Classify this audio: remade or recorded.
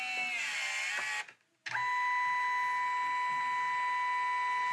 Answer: recorded